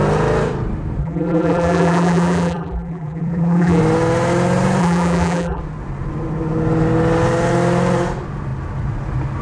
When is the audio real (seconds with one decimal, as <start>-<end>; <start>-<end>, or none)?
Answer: 0.0-1.0; 3.8-4.8; 5.6-9.4